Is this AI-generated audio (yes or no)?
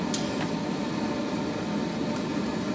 no